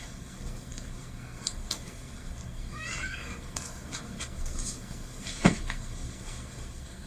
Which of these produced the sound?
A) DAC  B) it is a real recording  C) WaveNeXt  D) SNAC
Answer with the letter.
D